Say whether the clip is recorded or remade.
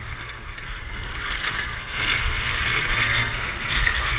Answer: remade